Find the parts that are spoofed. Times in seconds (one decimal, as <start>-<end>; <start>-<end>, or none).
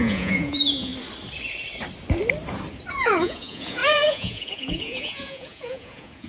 0.0-0.9; 2.9-6.3